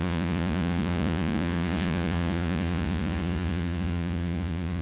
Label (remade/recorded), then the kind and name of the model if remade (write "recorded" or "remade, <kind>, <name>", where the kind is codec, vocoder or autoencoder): remade, vocoder, Vocos